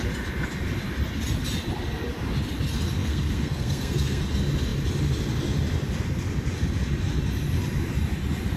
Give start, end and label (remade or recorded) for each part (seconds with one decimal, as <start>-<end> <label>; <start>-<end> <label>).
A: 0.0-3.0 recorded; 3.0-4.2 remade; 4.2-8.6 recorded